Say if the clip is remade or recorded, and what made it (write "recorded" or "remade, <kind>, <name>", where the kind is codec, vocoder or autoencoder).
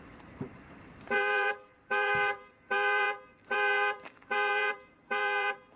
remade, vocoder, BigVGAN v2